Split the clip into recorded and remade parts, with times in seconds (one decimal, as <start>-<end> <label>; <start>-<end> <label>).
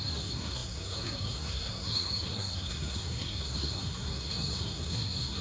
0.0-5.4 remade